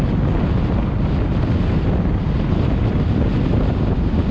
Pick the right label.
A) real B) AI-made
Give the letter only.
A